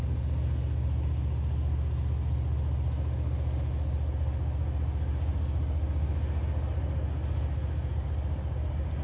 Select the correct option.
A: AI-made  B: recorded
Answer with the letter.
B